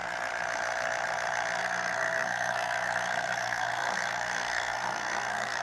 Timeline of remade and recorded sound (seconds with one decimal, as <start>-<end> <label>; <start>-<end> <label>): 0.0-1.6 recorded; 1.6-5.6 remade